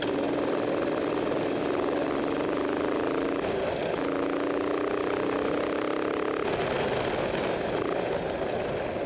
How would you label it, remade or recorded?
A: recorded